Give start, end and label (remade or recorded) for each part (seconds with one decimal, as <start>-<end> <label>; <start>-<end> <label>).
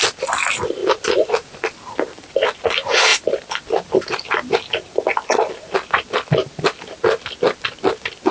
0.0-0.8 recorded; 0.8-2.3 remade; 2.3-3.1 recorded; 3.1-4.9 remade; 4.9-8.3 recorded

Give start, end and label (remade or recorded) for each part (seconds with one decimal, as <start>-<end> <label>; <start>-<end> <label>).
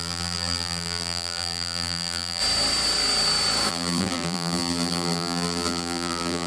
0.0-2.4 remade; 2.4-3.7 recorded; 3.7-6.5 remade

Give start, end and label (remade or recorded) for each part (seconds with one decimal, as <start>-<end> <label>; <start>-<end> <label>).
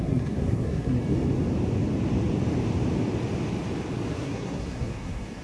0.0-1.0 remade; 1.0-4.1 recorded; 4.1-5.4 remade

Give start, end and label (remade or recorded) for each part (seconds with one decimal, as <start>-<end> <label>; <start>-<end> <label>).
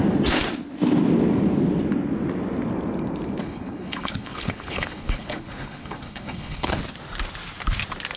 0.0-3.4 recorded; 3.4-6.8 remade; 6.8-8.2 recorded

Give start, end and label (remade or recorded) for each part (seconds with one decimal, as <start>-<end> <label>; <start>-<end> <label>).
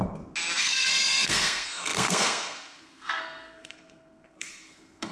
0.0-0.6 recorded; 0.6-5.1 remade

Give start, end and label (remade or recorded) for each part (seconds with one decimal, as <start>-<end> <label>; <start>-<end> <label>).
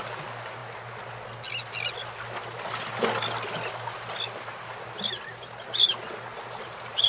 0.0-7.1 recorded